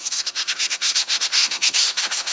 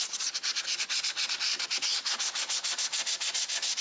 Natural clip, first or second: second